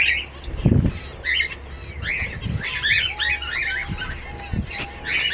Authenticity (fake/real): real